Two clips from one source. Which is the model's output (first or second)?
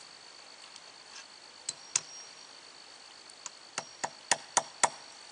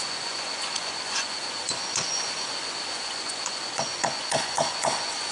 second